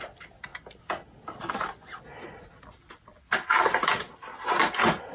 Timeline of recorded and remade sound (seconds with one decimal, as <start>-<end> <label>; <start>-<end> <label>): 0.0-5.1 recorded